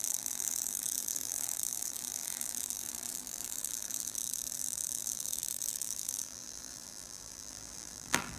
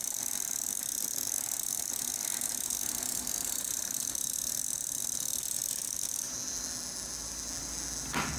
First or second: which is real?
second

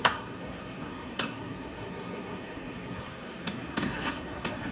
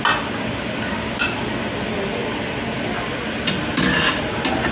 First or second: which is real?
second